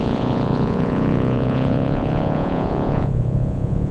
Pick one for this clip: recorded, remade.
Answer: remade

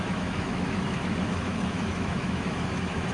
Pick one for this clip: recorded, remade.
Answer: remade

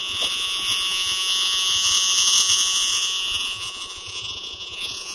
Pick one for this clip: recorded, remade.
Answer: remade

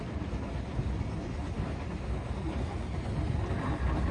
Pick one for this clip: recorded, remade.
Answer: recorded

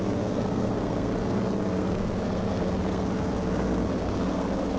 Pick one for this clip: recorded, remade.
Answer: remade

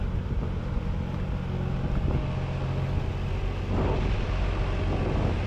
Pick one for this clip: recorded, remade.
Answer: recorded